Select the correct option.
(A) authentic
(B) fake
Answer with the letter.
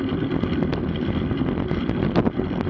A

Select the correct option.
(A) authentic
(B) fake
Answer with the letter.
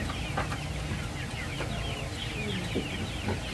A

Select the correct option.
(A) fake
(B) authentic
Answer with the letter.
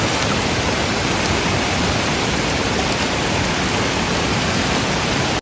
B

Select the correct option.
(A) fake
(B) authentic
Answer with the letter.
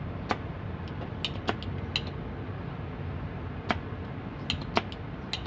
B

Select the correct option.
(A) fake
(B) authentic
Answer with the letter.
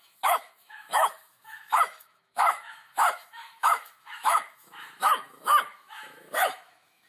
A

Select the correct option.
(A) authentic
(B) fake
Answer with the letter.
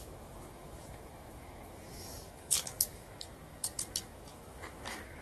B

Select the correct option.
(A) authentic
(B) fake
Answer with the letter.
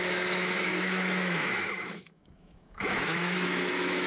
B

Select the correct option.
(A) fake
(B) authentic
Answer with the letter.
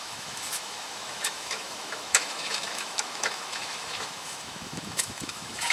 A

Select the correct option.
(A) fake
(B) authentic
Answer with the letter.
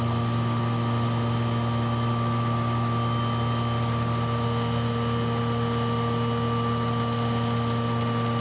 B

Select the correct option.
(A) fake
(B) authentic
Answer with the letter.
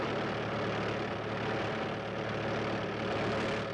B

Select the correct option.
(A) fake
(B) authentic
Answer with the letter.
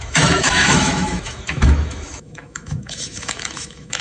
A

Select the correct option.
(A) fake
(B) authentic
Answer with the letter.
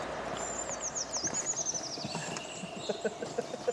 B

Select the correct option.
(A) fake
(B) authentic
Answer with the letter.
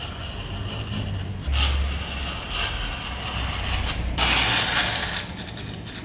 B